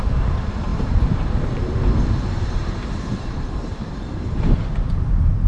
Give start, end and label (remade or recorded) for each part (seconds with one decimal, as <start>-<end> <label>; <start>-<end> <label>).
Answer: 0.0-5.5 remade